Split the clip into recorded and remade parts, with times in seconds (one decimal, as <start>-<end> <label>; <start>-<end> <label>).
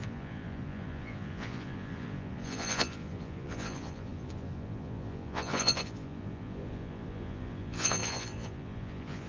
0.0-9.3 remade